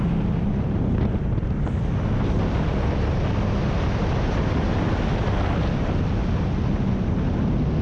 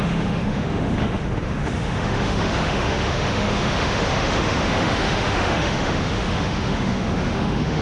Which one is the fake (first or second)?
second